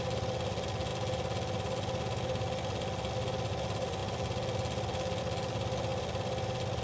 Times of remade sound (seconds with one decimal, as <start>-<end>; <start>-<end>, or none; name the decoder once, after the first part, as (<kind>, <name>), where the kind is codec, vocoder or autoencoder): none